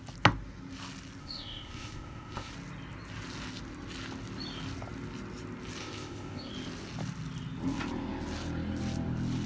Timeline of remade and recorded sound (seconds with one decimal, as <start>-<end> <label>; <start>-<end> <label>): 0.0-1.2 recorded; 1.2-2.5 remade; 2.5-5.8 recorded; 5.8-6.5 remade; 6.5-9.5 recorded